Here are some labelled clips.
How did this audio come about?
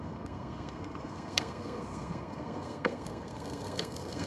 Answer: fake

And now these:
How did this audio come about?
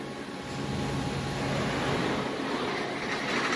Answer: real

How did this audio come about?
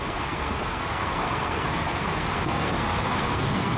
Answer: fake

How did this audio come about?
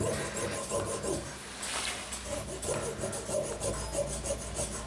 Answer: real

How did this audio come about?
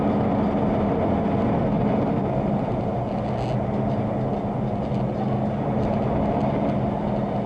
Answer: real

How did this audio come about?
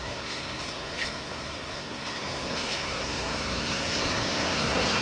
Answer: fake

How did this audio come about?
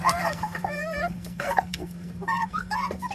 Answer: fake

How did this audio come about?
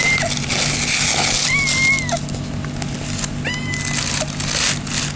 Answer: real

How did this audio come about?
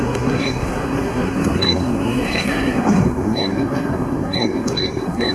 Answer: fake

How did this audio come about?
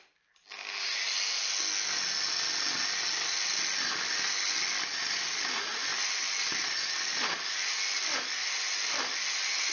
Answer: real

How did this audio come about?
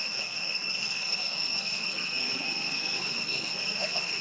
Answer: fake